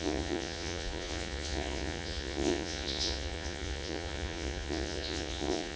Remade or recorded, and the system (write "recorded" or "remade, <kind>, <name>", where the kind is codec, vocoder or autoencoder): remade, vocoder, Vocos